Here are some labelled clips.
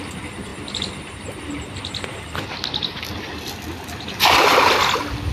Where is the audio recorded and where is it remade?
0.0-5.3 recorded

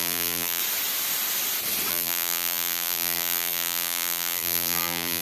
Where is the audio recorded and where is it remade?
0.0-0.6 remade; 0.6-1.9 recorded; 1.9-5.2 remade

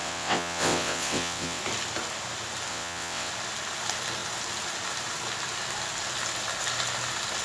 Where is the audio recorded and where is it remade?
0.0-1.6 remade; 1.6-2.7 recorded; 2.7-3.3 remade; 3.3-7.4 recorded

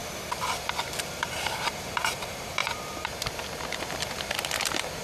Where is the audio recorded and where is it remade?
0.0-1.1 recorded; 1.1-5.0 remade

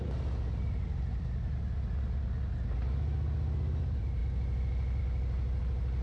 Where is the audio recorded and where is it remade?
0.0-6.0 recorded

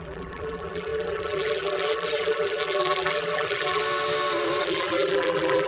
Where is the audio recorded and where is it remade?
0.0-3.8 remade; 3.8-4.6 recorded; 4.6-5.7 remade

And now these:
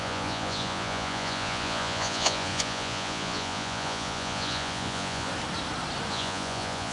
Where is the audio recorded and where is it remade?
0.0-5.3 remade; 5.3-6.1 recorded; 6.1-6.9 remade

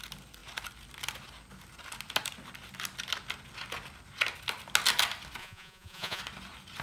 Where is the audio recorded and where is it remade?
0.0-5.4 recorded; 5.4-6.2 remade; 6.2-6.8 recorded